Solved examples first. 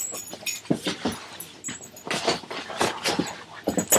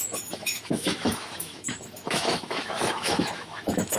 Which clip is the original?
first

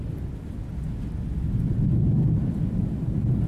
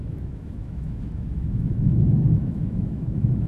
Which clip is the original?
first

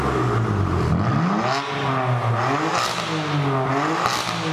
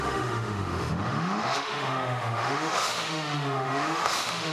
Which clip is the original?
first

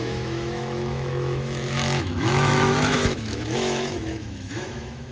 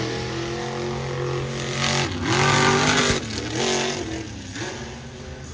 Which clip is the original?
second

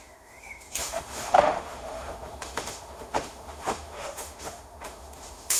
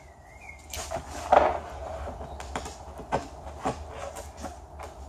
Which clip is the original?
second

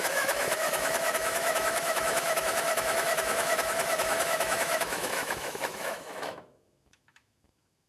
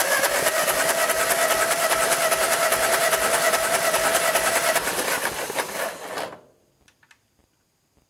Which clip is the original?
second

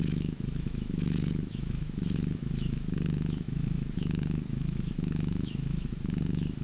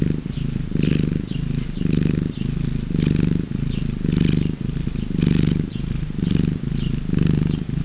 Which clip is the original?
second